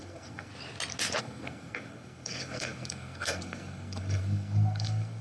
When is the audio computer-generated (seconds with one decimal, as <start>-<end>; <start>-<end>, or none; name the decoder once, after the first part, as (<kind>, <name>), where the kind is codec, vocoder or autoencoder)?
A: 0.0-0.5 (codec, SNAC); 1.2-5.2